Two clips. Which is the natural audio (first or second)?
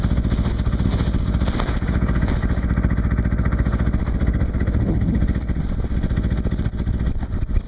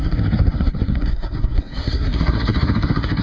first